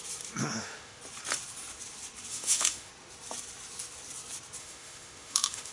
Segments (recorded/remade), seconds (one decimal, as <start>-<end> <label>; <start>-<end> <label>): 0.0-0.4 recorded; 0.4-1.0 remade; 1.0-2.3 recorded; 2.3-2.9 remade; 2.9-4.6 recorded; 4.6-5.7 remade